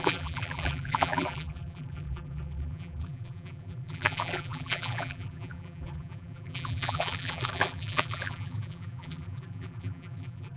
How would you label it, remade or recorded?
remade